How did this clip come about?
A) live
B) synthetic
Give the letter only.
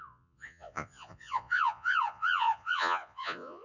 B